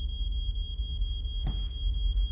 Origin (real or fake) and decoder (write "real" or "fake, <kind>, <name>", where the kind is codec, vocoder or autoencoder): real